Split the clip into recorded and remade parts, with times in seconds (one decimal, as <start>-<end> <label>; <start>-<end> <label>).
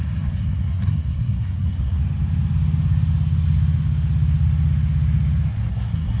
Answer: 0.0-2.0 remade; 2.0-5.7 recorded; 5.7-6.2 remade